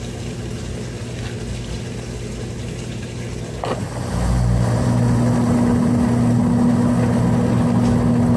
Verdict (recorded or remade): recorded